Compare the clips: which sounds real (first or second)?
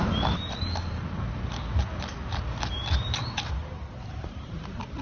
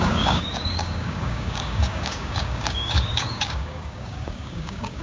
first